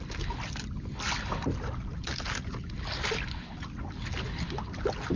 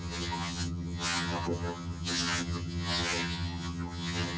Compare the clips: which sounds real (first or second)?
first